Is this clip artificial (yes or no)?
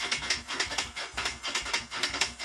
yes